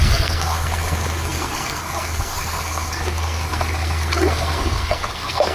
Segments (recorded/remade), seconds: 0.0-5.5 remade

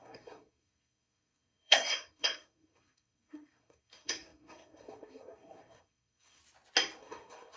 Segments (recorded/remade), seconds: 0.0-6.4 remade; 6.4-7.0 recorded; 7.0-7.6 remade

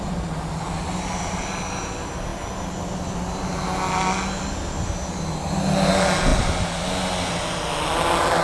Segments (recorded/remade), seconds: 0.0-8.4 recorded